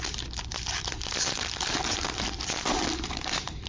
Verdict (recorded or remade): remade